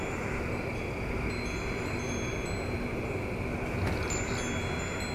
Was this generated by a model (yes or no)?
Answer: no